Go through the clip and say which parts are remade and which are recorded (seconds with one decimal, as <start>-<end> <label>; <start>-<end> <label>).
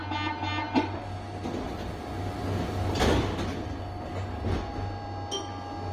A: 0.0-5.9 recorded